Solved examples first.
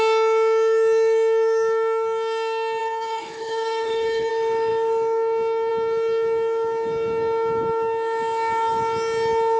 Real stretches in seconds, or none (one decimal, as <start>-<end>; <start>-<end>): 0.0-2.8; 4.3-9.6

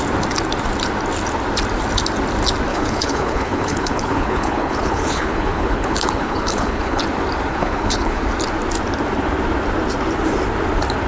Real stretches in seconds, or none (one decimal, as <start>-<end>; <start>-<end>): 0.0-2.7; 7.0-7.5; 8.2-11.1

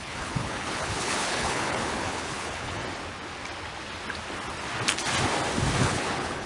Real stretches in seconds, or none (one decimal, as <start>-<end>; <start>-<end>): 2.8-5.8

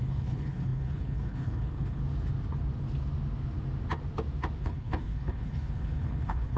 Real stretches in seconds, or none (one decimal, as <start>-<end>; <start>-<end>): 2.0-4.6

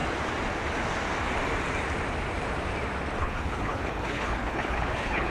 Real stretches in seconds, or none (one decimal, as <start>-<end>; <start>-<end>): 0.0-3.2

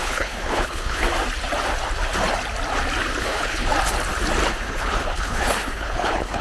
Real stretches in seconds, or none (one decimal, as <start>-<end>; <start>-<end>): 1.0-3.2; 3.7-4.5